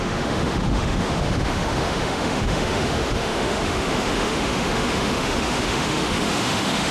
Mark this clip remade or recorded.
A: remade